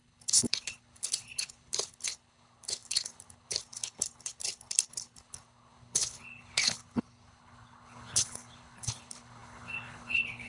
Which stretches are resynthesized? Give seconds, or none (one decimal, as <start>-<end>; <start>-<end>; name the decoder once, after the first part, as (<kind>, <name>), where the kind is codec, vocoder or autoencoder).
0.0-10.5 (codec, HILCodec)